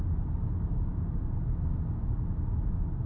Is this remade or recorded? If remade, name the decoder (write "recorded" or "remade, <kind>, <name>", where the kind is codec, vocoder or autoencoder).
recorded